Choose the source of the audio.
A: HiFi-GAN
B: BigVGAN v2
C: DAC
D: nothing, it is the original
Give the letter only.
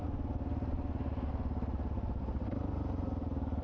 D